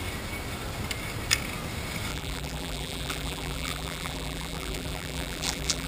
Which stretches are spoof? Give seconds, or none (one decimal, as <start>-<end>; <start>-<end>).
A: 2.1-5.9